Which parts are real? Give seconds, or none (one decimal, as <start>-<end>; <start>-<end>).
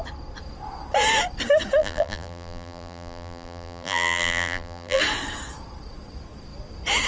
0.0-1.8; 5.0-7.1